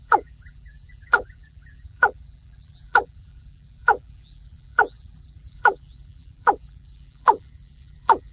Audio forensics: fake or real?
fake